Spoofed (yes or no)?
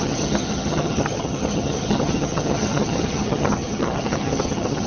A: yes